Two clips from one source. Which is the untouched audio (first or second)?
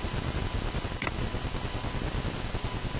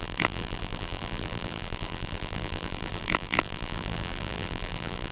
first